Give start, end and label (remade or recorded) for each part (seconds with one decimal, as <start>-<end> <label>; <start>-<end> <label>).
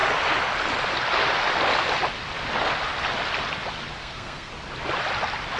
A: 0.0-4.0 recorded; 4.0-4.5 remade; 4.5-5.6 recorded